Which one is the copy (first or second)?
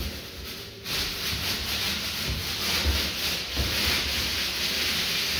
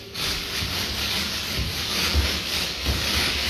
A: second